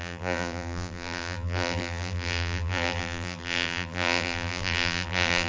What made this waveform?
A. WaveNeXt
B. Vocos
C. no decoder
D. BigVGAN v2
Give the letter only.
D